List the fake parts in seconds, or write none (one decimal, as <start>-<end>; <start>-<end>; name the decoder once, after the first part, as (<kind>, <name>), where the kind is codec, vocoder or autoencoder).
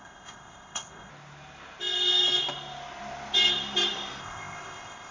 0.0-1.1 (codec, ZipCodec); 4.2-5.1